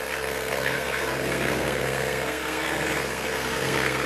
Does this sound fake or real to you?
fake